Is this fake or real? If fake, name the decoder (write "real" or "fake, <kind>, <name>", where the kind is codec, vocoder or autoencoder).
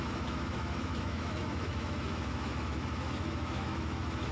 fake, autoencoder, DAC-VAE